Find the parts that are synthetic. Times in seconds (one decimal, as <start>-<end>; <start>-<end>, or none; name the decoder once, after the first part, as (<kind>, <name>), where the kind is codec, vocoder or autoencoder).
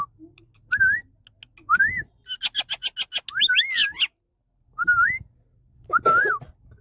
none